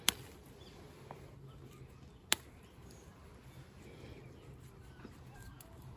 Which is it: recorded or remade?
recorded